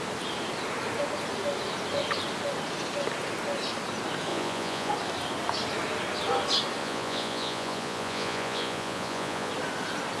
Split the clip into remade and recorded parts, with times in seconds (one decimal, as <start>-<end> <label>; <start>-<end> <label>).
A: 0.0-4.3 recorded; 4.3-4.9 remade; 4.9-6.8 recorded; 6.8-9.5 remade; 9.5-10.2 recorded